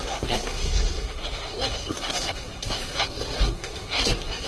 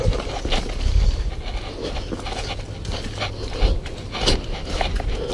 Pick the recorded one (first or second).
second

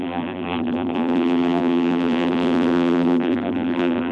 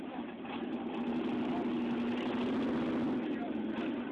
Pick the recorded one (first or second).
second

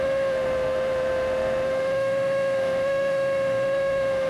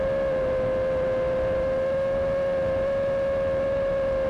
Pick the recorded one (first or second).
second